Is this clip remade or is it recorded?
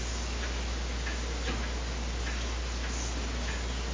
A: recorded